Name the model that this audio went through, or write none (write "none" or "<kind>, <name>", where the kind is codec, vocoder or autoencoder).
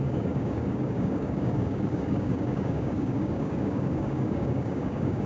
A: codec, DAC